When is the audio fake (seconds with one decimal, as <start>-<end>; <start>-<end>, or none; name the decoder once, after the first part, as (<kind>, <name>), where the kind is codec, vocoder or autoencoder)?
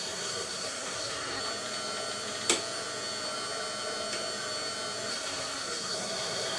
0.0-1.4 (codec, SNAC); 5.1-6.6